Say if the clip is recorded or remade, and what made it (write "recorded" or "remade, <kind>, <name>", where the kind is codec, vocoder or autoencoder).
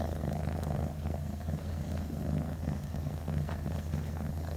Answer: remade, codec, SNAC